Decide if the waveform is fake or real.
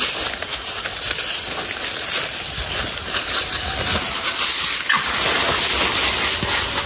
real